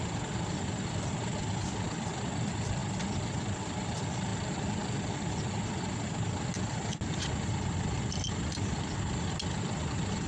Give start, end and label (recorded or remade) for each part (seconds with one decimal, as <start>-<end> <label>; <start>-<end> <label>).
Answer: 0.0-10.3 recorded